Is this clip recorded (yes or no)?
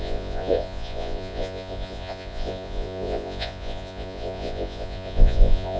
no